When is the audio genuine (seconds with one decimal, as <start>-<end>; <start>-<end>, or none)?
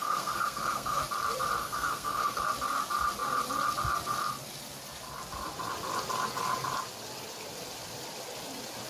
1.0-1.6; 2.4-8.9